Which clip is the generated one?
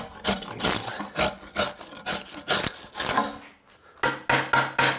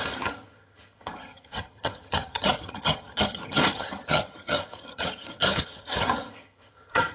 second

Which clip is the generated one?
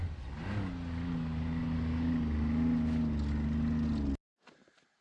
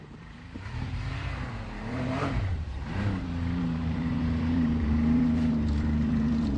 second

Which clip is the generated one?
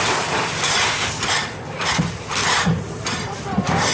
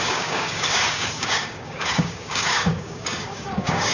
second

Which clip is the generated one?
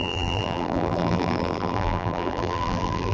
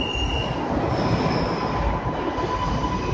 first